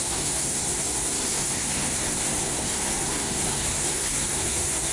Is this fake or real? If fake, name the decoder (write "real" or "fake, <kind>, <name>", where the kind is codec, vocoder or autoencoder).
fake, codec, SNAC